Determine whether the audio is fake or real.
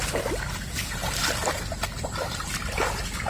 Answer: real